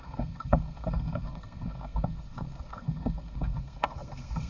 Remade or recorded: remade